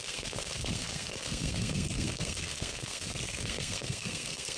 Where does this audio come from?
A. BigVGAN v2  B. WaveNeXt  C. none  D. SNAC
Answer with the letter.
D